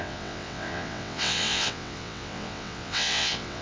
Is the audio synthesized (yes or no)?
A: yes